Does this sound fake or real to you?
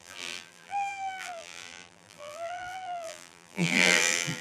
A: fake